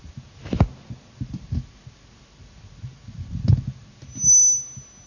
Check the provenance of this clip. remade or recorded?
recorded